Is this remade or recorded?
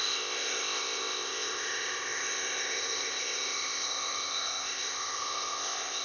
remade